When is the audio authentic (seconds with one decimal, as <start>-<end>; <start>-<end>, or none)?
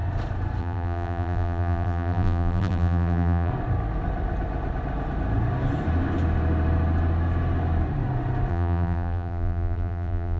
0.0-0.6; 3.5-8.5